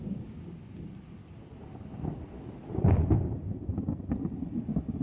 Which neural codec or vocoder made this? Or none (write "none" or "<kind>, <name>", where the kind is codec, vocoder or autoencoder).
none